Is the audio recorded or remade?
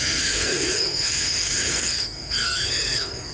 remade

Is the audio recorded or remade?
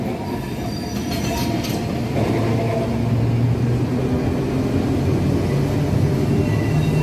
recorded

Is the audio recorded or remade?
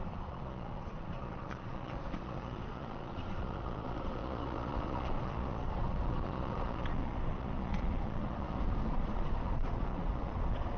remade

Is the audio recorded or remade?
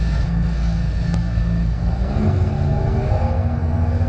remade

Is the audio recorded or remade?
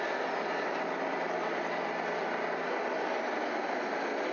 recorded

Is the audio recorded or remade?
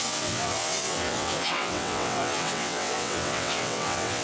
remade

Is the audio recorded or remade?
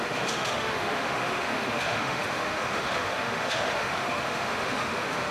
remade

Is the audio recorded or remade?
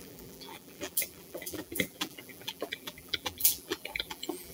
remade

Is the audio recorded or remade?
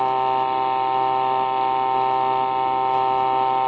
recorded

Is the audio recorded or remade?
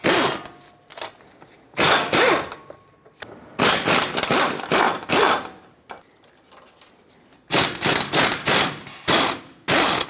recorded